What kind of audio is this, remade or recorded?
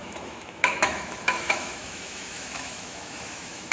remade